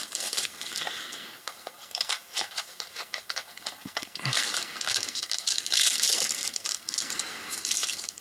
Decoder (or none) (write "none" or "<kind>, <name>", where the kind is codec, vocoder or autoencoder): codec, SNAC